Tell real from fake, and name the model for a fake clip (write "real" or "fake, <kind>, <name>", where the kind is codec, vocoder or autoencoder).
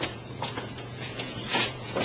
fake, vocoder, Vocos